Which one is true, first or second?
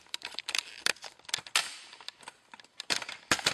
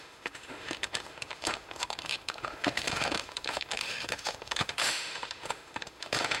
first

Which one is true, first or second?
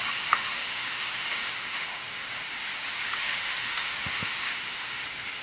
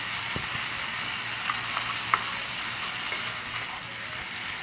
second